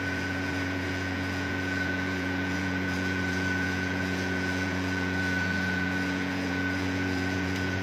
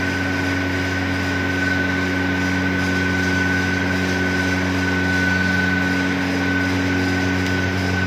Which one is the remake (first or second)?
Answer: first